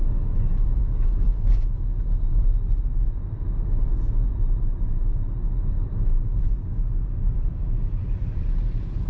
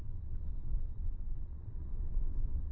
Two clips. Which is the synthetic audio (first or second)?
second